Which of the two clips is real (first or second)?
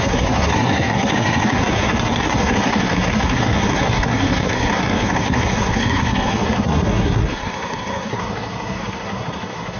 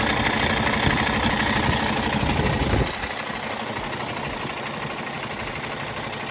second